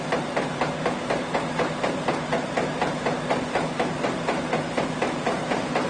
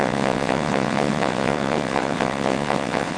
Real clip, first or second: first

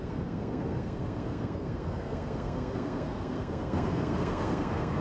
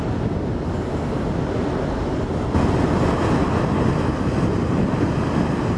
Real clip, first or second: second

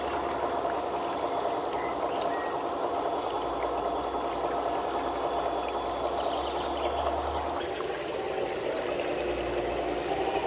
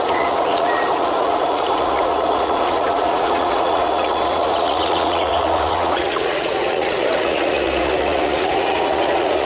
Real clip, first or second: first